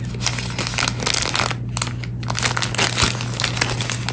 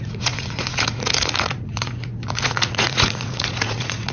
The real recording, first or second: first